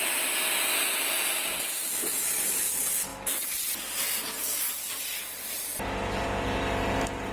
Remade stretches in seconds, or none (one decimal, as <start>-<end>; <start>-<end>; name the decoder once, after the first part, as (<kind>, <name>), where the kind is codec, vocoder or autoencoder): none